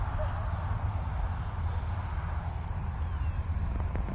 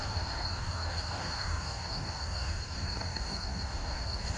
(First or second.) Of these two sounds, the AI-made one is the second